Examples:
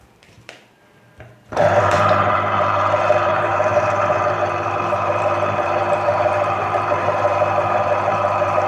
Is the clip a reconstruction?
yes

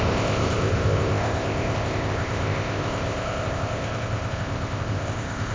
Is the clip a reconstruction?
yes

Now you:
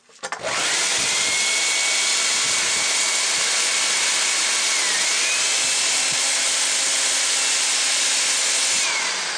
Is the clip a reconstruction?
no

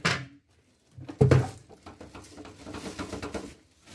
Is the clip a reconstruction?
no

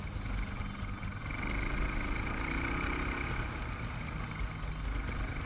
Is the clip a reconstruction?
no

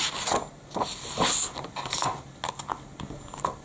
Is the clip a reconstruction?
no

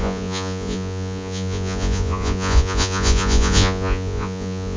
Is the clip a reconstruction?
yes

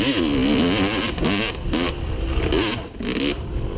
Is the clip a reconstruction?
no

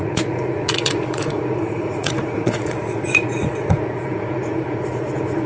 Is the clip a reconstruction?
yes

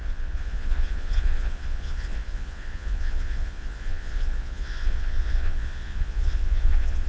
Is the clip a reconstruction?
yes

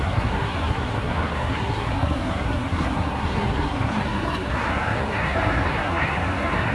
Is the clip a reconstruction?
yes